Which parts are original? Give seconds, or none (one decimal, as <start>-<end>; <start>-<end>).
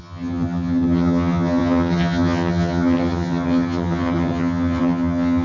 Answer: none